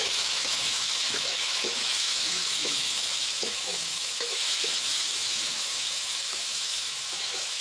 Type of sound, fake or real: fake